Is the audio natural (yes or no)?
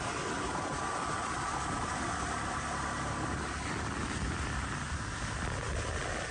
yes